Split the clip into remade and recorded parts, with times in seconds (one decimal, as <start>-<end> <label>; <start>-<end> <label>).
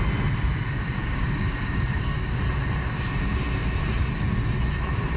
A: 0.0-1.0 recorded; 1.0-2.4 remade; 2.4-5.2 recorded